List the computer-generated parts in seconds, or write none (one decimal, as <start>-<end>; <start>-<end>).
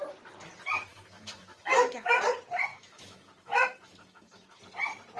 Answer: 0.9-2.2; 2.7-4.6